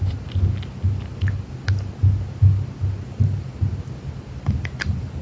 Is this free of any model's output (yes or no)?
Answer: yes